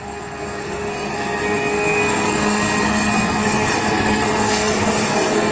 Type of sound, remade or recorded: remade